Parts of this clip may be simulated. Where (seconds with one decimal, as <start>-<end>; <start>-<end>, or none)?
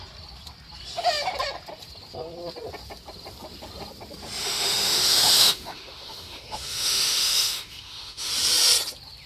4.4-8.3